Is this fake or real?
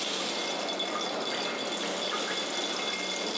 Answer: real